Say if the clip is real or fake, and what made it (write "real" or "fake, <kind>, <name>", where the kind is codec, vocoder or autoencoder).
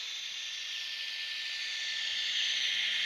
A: real